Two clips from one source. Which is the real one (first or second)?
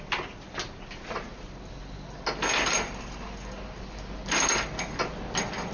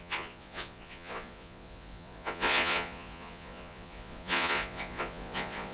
first